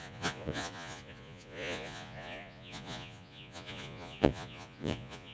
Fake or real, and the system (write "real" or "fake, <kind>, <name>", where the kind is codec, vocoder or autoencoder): fake, vocoder, Vocos